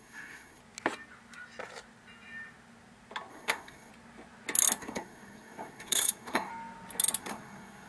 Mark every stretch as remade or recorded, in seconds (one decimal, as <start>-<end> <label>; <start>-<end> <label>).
0.0-0.6 remade; 0.6-3.3 recorded; 3.3-3.9 remade; 3.9-4.8 recorded; 4.8-6.5 remade; 6.5-7.2 recorded; 7.2-7.9 remade